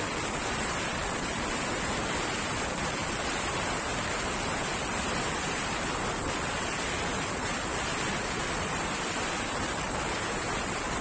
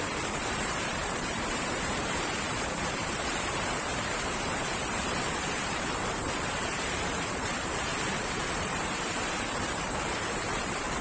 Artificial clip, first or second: second